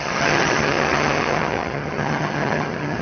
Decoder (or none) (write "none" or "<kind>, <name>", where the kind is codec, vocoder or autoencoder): vocoder, HiFi-GAN